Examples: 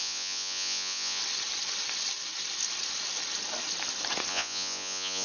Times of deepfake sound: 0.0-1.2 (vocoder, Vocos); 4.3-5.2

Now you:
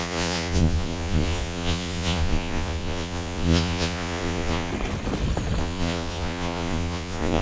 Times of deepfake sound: 0.0-4.7 (vocoder, Vocos); 5.6-7.4

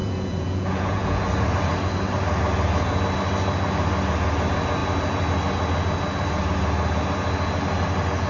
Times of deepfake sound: 0.0-1.2 (vocoder, Vocos)

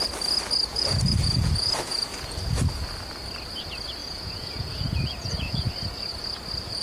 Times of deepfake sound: 0.7-2.5 (vocoder, Vocos); 4.0-5.7

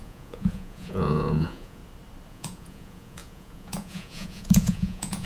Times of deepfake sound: 0.0-1.8 (vocoder, Vocos); 2.3-5.3

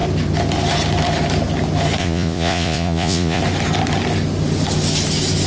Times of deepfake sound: 2.0-3.4 (vocoder, Vocos)

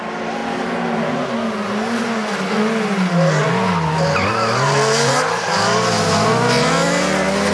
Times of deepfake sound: none

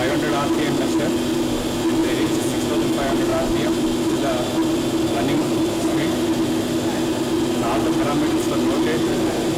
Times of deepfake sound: 2.0-2.7 (vocoder, Vocos)